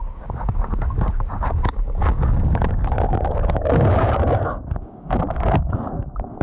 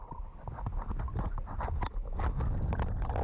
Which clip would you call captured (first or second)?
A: second